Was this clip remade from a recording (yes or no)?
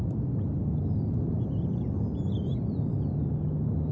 no